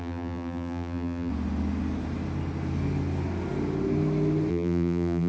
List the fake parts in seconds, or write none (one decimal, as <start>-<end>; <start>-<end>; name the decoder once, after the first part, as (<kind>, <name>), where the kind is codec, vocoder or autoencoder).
0.0-1.3 (vocoder, BigVGAN v2); 4.5-5.3

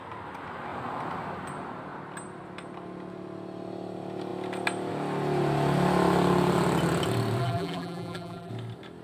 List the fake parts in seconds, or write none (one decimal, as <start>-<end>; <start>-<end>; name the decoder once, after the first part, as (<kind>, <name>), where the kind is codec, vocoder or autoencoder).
7.4-8.5 (vocoder, BigVGAN v2)